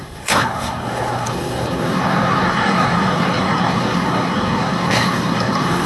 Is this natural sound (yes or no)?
no